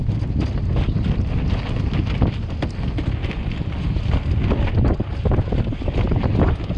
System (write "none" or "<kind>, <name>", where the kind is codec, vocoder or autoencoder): none